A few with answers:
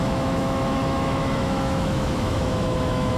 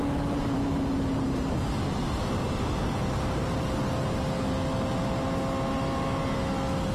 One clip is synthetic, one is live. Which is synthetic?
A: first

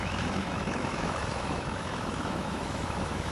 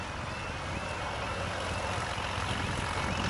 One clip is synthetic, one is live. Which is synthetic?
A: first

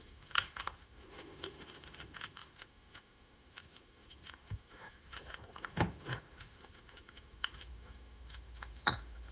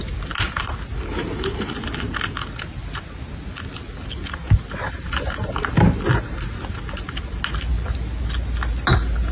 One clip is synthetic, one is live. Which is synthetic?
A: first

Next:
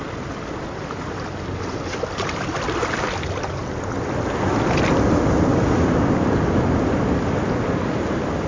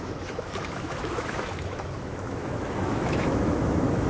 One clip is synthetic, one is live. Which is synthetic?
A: second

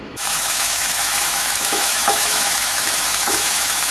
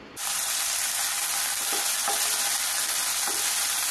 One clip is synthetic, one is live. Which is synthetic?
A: first